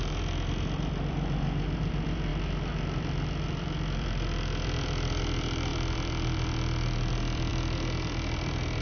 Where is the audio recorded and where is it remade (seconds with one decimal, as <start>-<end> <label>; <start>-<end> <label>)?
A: 0.0-8.8 remade